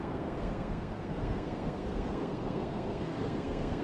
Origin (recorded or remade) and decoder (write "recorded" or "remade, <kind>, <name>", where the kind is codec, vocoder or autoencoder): remade, codec, SNAC